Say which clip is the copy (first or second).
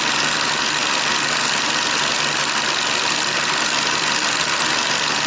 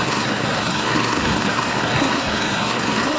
second